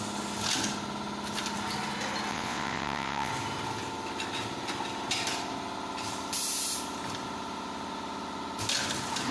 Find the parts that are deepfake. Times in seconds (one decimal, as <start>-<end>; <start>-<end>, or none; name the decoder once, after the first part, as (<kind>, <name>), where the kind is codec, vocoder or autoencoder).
2.3-3.3 (vocoder, WaveNeXt)